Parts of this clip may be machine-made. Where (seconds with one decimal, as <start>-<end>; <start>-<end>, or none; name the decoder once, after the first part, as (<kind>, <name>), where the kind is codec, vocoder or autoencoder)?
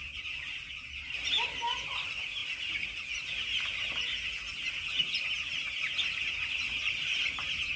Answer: none